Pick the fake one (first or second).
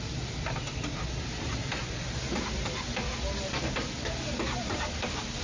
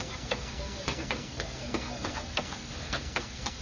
second